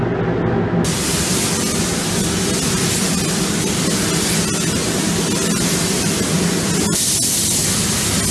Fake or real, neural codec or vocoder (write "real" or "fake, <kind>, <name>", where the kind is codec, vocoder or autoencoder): real